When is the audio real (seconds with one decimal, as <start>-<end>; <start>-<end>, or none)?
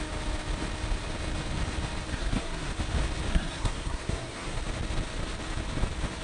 0.0-2.1; 2.7-3.3; 4.6-6.2